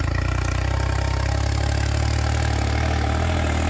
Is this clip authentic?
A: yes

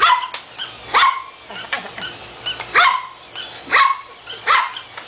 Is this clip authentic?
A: yes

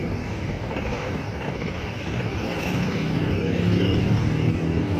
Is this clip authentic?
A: no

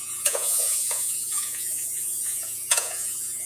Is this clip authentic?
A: no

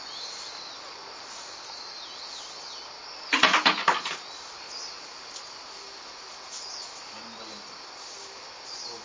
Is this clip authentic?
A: yes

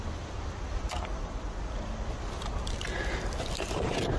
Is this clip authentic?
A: yes